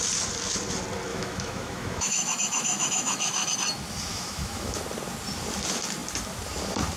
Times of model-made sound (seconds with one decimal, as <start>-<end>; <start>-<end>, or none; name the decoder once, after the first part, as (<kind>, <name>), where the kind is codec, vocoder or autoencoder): 1.1-3.5 (autoencoder, DAC-VAE); 4.1-4.8